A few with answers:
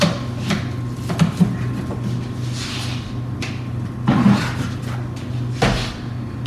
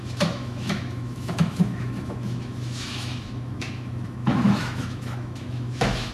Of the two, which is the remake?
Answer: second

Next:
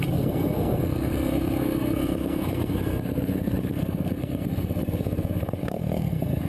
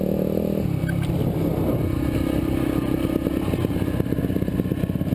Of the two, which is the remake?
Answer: first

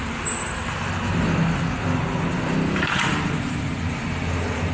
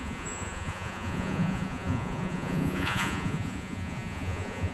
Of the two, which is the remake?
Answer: second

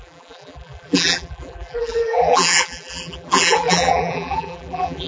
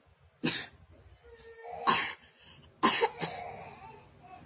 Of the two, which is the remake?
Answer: first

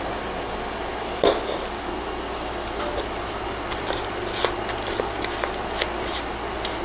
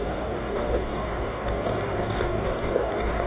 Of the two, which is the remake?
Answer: second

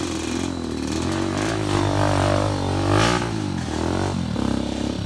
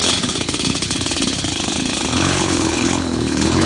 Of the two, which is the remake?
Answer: second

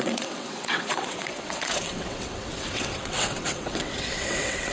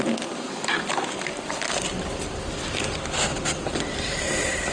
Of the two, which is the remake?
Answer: first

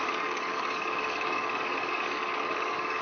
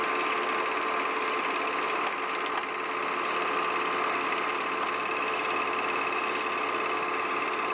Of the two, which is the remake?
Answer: first